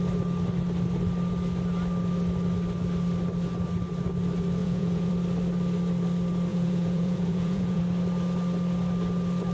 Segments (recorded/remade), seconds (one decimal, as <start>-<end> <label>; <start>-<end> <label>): 0.0-4.6 recorded; 4.6-5.1 remade; 5.1-6.5 recorded; 6.5-7.8 remade; 7.8-9.5 recorded

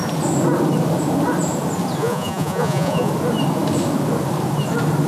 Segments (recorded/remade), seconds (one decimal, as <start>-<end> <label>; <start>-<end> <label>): 0.0-2.0 recorded; 2.0-3.1 remade; 3.1-5.1 recorded